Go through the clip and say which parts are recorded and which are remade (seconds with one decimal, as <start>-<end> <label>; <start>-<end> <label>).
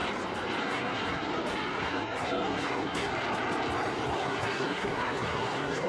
0.0-0.6 recorded; 0.6-1.3 remade; 1.3-1.8 recorded; 1.8-3.1 remade; 3.1-4.2 recorded; 4.2-5.9 remade